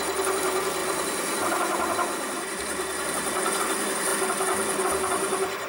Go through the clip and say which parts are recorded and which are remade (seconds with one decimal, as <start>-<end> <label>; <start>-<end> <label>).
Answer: 0.0-0.8 recorded; 0.8-3.6 remade; 3.6-5.7 recorded